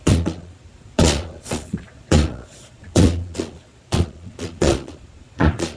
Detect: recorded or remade remade